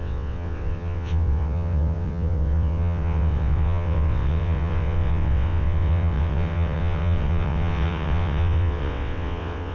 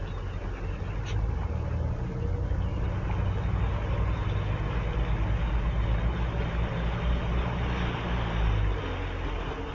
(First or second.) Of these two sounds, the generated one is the first